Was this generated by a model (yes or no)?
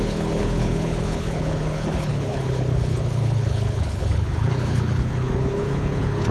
yes